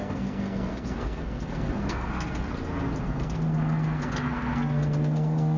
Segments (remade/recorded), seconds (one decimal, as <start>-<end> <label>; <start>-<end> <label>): 0.0-2.5 remade; 2.5-3.0 recorded; 3.0-5.6 remade